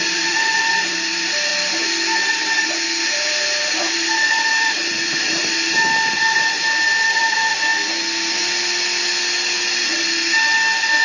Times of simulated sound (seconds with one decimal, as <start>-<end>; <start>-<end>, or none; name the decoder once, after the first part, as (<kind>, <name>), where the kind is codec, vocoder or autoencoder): 0.0-1.5 (vocoder, BigVGAN v2); 3.0-7.7